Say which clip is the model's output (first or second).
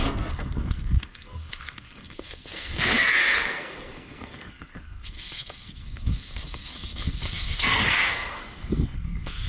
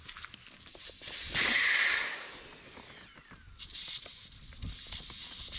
first